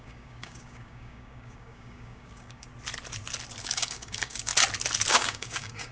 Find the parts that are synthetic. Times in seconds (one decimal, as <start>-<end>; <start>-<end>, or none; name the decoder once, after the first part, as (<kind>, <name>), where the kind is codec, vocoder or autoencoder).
0.0-2.7 (codec, DAC); 3.6-4.5; 5.1-5.9